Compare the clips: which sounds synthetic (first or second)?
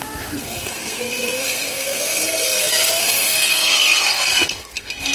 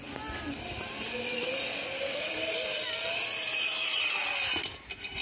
first